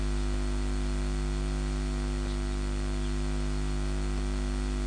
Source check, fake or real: real